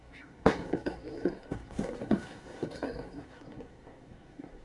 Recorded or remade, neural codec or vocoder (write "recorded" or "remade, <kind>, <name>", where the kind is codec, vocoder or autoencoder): remade, codec, SNAC